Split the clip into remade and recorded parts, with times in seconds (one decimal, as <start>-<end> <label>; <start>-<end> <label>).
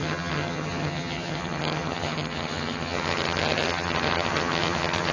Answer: 0.0-5.1 remade